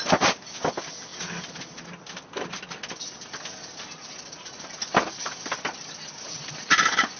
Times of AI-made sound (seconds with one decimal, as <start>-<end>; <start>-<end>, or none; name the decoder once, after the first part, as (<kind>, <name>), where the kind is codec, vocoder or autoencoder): none